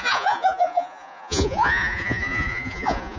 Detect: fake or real fake